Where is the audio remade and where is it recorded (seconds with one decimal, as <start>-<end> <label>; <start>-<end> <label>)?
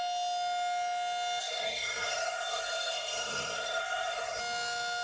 0.0-1.4 recorded; 1.4-4.4 remade; 4.4-5.0 recorded